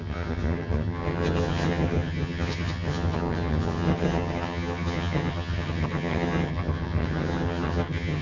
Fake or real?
fake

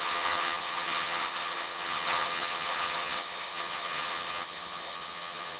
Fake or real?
fake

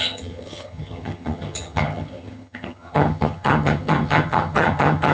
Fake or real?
fake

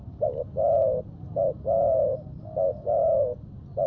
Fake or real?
real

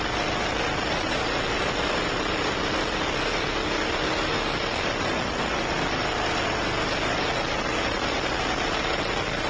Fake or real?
real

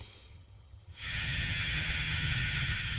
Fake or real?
fake